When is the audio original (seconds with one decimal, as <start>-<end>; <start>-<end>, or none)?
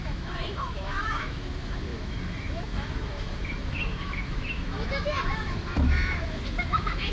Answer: none